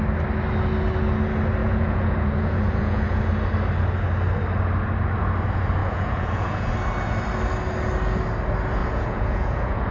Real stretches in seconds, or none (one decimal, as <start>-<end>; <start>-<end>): 0.0-1.6; 3.3-5.8; 6.7-8.8